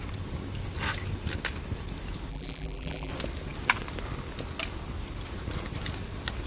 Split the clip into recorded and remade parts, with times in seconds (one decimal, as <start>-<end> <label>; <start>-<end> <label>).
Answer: 0.0-2.3 recorded; 2.3-3.1 remade; 3.1-6.5 recorded